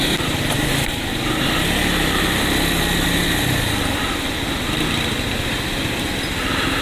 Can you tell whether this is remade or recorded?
recorded